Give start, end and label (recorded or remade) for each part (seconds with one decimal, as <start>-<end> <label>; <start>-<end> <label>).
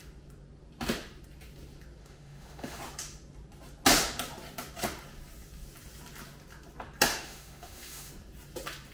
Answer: 0.0-2.0 recorded; 2.0-2.8 remade; 2.8-7.1 recorded; 7.1-8.1 remade; 8.1-8.9 recorded